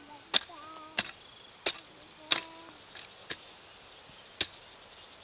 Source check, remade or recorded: recorded